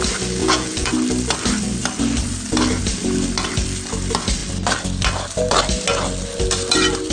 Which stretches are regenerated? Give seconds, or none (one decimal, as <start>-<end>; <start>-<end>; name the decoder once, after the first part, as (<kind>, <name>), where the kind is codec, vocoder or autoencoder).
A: 0.4-0.9 (vocoder, Vocos)